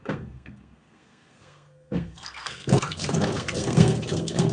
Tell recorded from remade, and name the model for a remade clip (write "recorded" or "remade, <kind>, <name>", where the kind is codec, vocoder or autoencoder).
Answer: remade, codec, SNAC